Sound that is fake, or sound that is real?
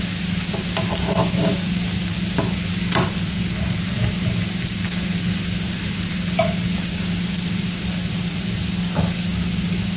real